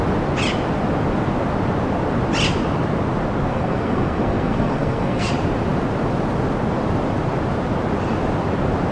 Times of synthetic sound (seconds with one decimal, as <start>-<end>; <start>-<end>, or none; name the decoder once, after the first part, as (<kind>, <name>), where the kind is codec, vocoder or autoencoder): 3.5-5.3 (codec, SNAC)